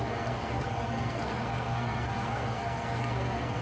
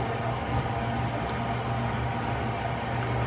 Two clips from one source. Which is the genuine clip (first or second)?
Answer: second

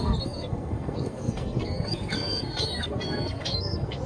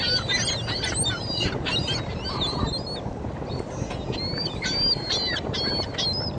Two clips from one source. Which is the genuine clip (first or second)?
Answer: second